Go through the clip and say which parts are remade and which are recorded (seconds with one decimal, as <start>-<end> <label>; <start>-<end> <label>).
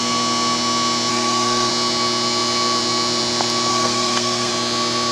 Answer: 0.0-1.1 recorded; 1.1-1.7 remade; 1.7-3.7 recorded; 3.7-4.5 remade; 4.5-5.1 recorded